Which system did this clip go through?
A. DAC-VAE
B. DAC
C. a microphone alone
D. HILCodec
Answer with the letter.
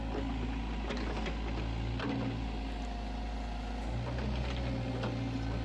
C